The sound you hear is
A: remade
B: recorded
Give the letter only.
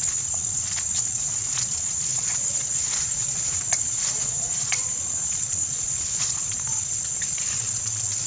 A